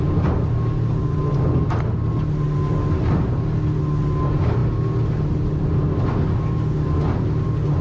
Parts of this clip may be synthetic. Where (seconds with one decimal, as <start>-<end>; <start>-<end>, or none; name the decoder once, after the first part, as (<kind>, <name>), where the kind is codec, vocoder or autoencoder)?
none

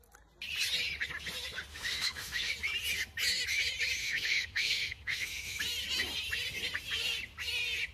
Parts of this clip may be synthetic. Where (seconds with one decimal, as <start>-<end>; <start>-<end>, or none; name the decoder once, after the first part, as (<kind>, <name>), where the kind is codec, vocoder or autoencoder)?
1.7-2.5 (autoencoder, DAC-VAE); 4.0-5.6

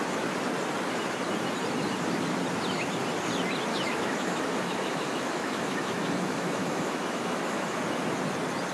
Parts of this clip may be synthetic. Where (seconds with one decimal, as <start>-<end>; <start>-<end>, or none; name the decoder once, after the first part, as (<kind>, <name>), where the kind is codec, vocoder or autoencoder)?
3.7-7.8 (autoencoder, DAC-VAE)

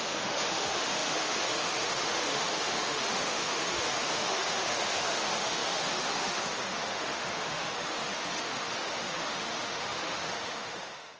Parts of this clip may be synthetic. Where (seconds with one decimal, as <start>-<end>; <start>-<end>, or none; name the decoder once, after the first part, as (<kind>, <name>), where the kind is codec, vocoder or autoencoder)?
0.0-11.2 (autoencoder, DAC-VAE)

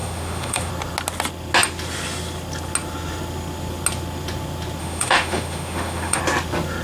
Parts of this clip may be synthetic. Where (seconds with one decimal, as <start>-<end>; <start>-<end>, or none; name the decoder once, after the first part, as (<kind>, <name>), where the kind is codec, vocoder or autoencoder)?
0.0-0.7 (autoencoder, DAC-VAE); 4.8-6.2

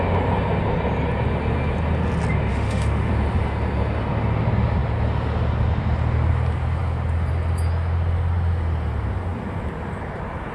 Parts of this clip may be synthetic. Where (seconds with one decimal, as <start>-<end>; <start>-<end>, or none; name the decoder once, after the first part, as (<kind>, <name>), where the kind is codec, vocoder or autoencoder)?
2.5-3.1 (autoencoder, DAC-VAE)